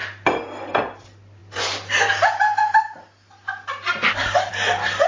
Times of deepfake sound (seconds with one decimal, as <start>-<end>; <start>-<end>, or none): none